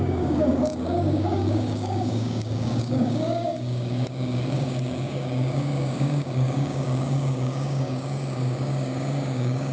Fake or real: fake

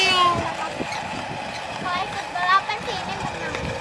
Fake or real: real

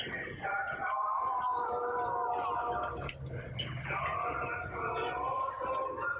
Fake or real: real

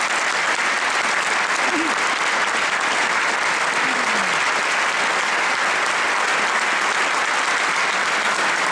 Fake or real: real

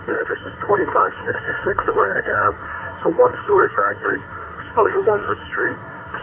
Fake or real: fake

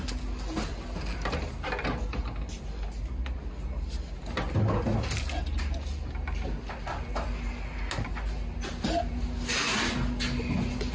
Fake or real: real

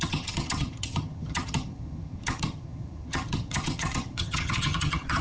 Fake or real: fake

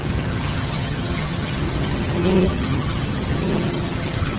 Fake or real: fake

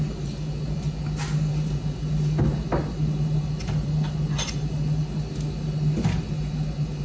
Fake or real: real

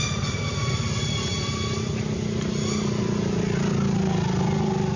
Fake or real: real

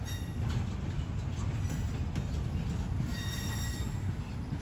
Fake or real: real